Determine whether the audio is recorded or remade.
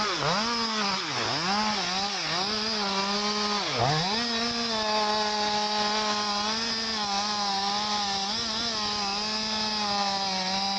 recorded